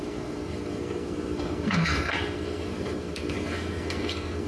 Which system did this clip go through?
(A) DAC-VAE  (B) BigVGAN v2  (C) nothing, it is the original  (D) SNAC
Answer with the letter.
D